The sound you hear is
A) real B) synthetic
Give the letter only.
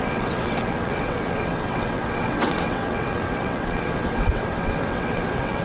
B